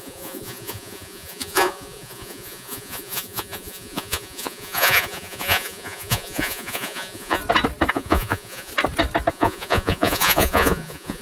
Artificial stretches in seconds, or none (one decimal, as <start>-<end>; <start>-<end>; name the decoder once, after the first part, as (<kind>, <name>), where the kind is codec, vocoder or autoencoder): 0.0-7.4 (vocoder, Vocos); 7.9-8.7; 9.3-11.2